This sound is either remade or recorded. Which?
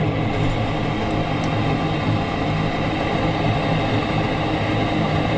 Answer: recorded